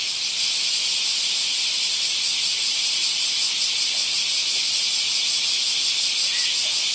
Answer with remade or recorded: recorded